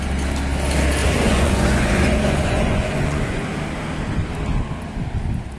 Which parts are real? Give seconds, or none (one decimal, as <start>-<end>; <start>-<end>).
0.0-1.0; 3.5-5.6